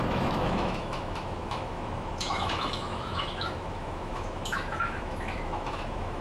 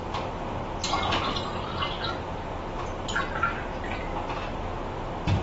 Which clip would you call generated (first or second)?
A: first